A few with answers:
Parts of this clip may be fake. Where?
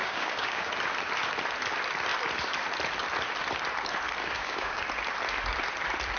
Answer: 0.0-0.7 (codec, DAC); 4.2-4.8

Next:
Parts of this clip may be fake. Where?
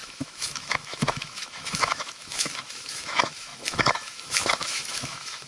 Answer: 0.0-5.5 (autoencoder, DAC-VAE)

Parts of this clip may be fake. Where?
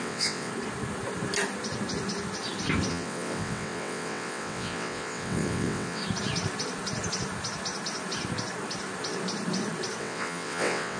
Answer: 0.0-0.5 (vocoder, WaveNeXt); 2.9-6.0; 10.0-11.0